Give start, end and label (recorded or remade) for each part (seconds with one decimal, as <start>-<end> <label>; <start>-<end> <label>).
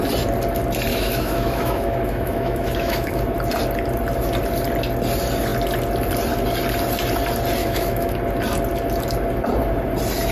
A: 0.0-0.9 recorded; 0.9-3.2 remade; 3.2-7.6 recorded; 7.6-8.2 remade; 8.2-10.3 recorded